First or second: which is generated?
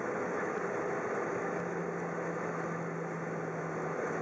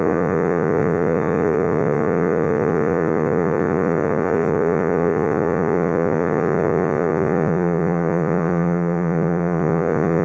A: second